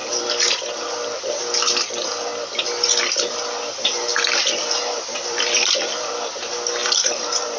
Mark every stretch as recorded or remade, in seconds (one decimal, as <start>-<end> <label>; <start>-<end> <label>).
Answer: 0.0-4.1 recorded; 4.1-6.1 remade; 6.1-6.8 recorded; 6.8-7.6 remade